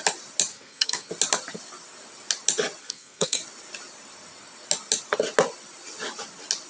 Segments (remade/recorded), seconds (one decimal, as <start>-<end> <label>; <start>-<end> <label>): 0.0-0.5 recorded; 0.5-1.1 remade; 1.1-2.8 recorded; 2.8-3.4 remade; 3.4-6.7 recorded